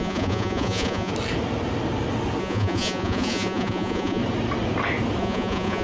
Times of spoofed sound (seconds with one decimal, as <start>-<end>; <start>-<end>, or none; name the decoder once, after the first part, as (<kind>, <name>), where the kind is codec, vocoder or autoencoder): 0.0-1.1 (vocoder, Vocos); 2.4-4.2; 5.2-5.8